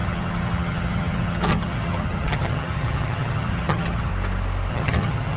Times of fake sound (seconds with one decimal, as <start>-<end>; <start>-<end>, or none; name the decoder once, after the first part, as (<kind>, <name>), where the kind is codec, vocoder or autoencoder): 0.0-4.1 (vocoder, HiFi-GAN); 4.7-5.4

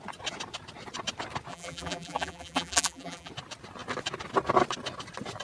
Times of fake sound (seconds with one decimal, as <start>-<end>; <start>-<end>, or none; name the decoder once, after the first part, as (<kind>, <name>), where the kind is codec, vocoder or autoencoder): 1.5-3.3 (vocoder, BigVGAN v2)

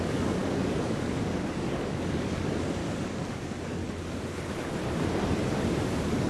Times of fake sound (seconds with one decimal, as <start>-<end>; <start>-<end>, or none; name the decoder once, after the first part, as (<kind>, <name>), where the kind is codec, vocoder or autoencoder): 0.0-2.8 (codec, DAC); 3.3-3.8; 5.6-6.3